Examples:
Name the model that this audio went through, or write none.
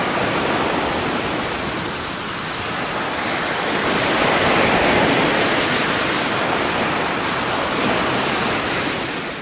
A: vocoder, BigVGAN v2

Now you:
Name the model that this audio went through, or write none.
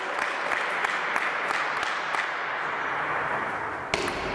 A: none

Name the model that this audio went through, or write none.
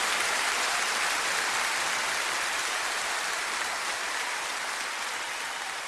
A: none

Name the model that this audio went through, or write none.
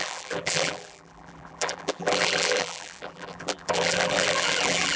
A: vocoder, BigVGAN v2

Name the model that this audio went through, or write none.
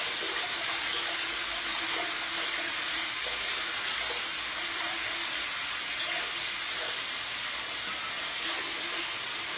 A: none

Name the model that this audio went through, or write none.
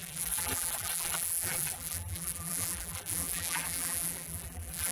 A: vocoder, BigVGAN v2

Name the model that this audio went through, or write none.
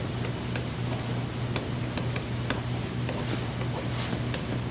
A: none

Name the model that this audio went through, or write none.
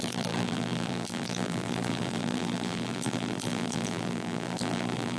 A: vocoder, BigVGAN v2